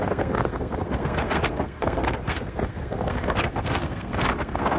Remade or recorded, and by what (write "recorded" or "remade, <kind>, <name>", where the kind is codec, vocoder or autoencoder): remade, codec, SNAC